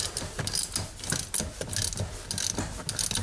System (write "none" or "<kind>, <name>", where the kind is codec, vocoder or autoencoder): none